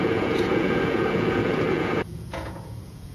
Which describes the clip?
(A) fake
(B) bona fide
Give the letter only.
A